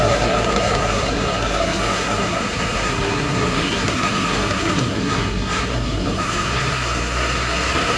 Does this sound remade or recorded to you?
remade